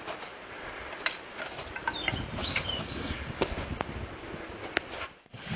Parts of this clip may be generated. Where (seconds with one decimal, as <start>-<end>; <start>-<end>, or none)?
2.4-3.5